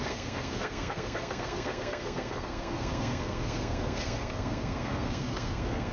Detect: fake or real fake